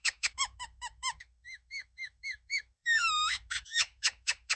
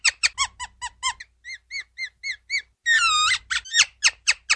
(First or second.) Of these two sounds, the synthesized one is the first